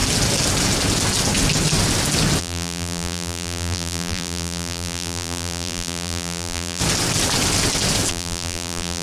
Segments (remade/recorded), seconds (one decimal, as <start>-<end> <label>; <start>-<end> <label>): 0.0-2.4 recorded; 2.4-6.8 remade; 6.8-8.1 recorded; 8.1-9.0 remade